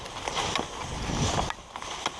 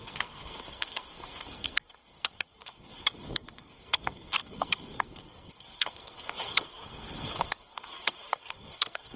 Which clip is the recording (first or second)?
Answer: first